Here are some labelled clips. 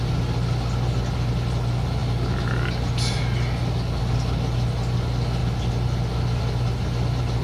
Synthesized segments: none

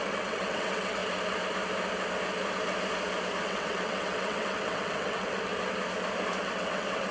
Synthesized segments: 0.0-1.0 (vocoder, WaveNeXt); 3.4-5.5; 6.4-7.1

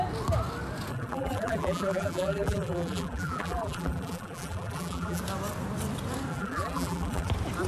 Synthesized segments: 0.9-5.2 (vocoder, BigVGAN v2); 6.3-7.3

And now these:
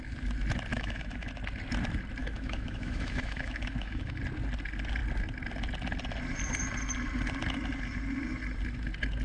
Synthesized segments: 0.7-1.3 (autoencoder, DAC-VAE); 2.2-4.2

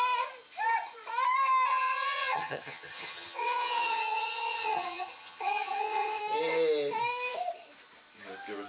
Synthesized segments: 1.7-6.2 (vocoder, HiFi-GAN)